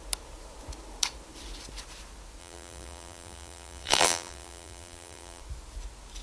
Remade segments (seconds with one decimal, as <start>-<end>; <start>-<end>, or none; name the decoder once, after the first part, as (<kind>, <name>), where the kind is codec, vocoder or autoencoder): 2.4-5.4 (vocoder, BigVGAN v2)